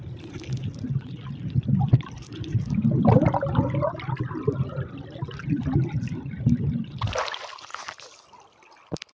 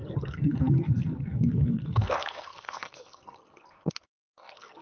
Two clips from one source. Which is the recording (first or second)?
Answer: first